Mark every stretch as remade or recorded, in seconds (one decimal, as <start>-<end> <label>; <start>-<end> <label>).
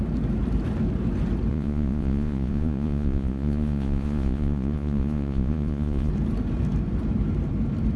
0.0-1.5 recorded; 1.5-6.1 remade; 6.1-8.0 recorded